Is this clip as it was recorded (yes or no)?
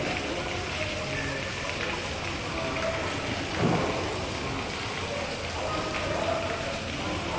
yes